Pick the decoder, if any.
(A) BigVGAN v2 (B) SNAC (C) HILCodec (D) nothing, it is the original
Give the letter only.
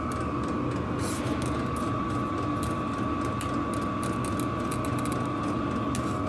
D